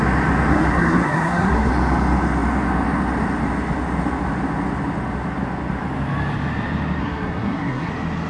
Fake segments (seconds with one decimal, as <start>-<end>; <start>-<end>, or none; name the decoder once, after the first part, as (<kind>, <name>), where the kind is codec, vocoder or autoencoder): 0.5-1.7 (codec, SNAC); 7.0-7.9